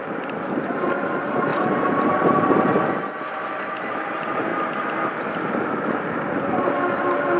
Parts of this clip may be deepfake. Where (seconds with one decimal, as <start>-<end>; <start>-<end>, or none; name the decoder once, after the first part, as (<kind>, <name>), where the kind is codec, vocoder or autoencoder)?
0.0-7.4 (vocoder, BigVGAN v2)